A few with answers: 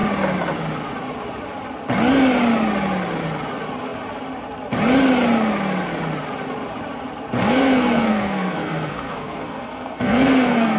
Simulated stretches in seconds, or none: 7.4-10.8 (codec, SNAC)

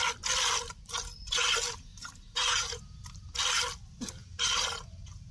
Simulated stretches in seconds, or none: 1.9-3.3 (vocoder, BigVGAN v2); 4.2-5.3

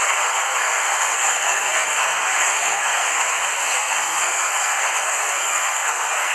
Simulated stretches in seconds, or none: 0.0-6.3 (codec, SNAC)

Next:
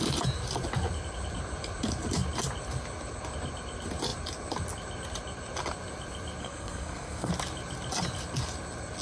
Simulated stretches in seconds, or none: 6.4-7.3 (codec, SNAC)

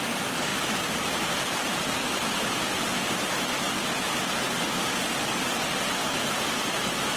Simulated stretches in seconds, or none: 0.5-2.5 (vocoder, BigVGAN v2); 2.9-3.7